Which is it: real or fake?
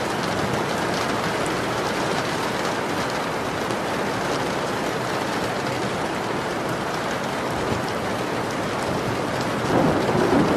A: real